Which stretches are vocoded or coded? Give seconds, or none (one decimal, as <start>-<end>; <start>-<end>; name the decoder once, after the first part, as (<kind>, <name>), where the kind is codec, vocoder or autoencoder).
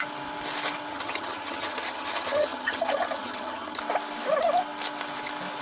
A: 0.9-3.8 (vocoder, HiFi-GAN)